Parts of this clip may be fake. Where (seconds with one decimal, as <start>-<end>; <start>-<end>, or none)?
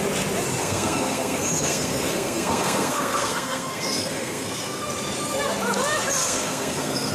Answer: 0.6-4.9; 6.2-7.1